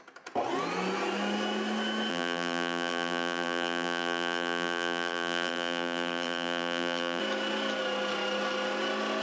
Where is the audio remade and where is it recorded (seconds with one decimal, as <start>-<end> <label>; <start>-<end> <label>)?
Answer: 0.0-2.1 recorded; 2.1-7.2 remade; 7.2-9.2 recorded